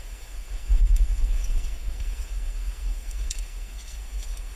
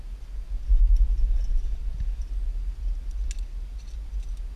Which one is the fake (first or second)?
first